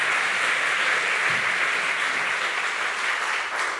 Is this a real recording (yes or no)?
yes